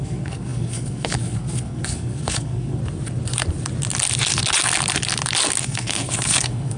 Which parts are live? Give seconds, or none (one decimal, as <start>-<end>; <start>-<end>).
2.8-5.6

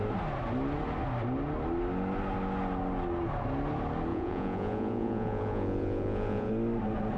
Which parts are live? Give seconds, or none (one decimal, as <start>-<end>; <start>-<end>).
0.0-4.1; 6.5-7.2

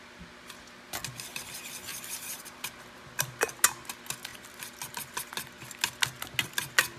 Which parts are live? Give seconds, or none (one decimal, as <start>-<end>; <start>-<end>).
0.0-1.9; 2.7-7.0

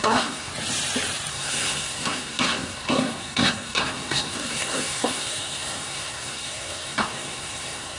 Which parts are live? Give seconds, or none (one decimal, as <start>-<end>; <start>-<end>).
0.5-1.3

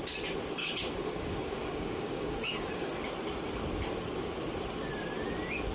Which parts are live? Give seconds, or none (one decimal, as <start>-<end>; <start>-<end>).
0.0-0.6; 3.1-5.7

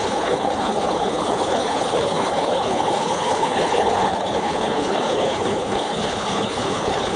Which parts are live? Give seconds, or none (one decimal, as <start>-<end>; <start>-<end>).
none

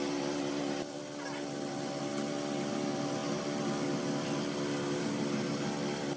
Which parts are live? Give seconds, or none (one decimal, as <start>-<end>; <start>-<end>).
0.0-6.2

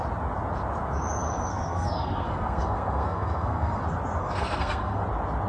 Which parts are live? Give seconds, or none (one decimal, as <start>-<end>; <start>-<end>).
0.0-1.5; 3.8-4.2; 5.0-5.5